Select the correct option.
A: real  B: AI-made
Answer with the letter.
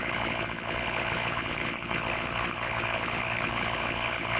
B